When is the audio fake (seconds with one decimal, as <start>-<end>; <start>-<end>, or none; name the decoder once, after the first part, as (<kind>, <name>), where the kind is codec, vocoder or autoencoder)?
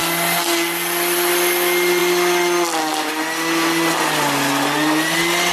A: none